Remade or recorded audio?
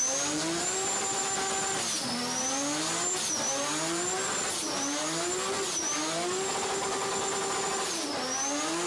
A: recorded